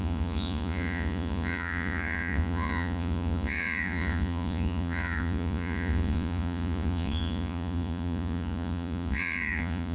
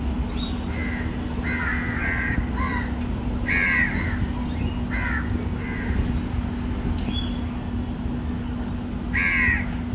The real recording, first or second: second